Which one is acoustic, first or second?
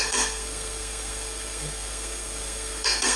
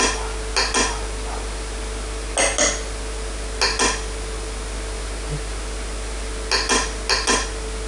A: second